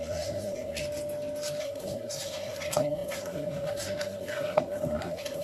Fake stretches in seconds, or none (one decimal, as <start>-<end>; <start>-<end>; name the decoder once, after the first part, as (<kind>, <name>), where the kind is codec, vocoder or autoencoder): 0.0-0.8 (codec, SNAC); 1.6-5.4